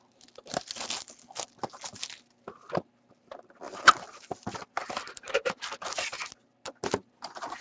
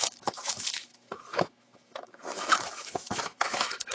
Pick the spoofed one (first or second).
second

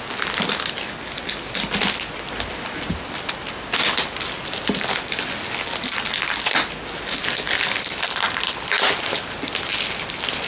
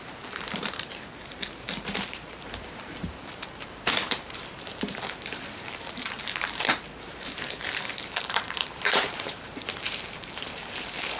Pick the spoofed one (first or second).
second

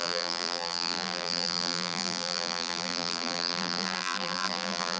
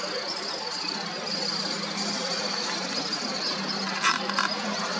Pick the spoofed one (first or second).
first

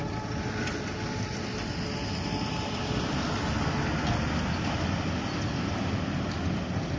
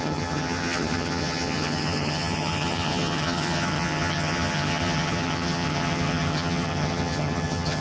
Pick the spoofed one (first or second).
second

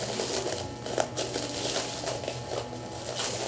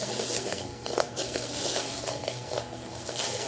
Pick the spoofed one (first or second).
second